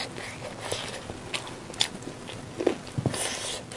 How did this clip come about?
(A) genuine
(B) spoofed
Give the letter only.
A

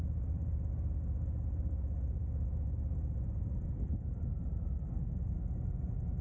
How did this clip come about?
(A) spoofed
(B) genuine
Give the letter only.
B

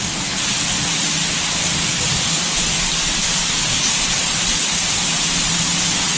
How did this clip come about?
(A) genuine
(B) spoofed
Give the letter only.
A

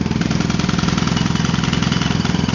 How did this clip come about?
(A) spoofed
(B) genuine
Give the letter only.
B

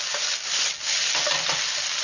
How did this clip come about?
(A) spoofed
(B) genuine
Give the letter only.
B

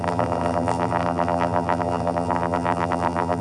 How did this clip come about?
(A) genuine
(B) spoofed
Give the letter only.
B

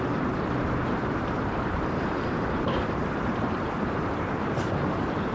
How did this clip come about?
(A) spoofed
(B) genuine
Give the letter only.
A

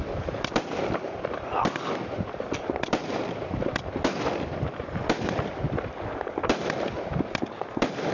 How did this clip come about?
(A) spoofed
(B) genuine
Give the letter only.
A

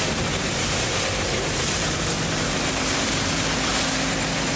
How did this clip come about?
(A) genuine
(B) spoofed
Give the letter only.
B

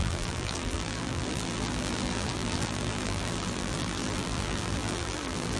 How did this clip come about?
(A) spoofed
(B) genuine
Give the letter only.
A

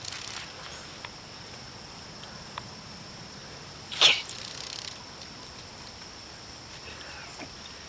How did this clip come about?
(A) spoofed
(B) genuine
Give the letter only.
A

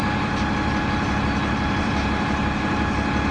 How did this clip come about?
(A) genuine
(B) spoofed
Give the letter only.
A